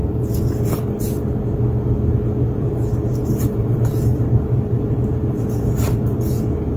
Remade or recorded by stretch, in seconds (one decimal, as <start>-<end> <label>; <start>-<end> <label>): 0.0-0.9 remade; 0.9-3.2 recorded; 3.2-6.2 remade; 6.2-6.8 recorded